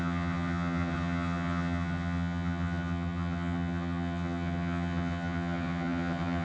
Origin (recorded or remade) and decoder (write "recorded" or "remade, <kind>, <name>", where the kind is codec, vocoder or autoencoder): remade, vocoder, HiFi-GAN